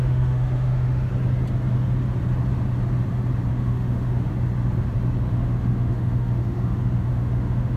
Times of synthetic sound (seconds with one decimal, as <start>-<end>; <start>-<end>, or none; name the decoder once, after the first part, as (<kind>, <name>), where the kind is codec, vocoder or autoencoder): 0.0-1.1 (autoencoder, DAC-VAE); 3.5-4.3; 5.3-7.8